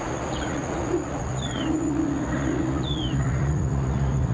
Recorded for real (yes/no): no